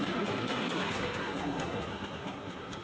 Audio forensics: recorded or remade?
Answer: remade